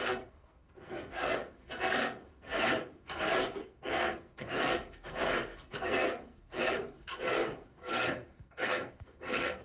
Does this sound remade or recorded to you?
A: remade